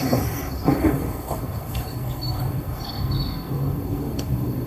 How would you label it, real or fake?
fake